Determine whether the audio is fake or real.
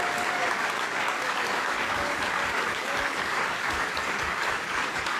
fake